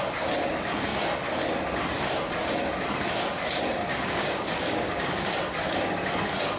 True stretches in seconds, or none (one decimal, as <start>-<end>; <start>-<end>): 0.0-3.9; 5.1-6.6